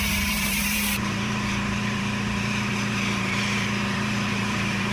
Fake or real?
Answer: fake